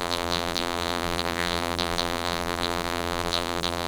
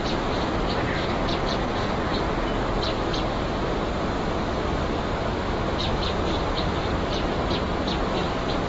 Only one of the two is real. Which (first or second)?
second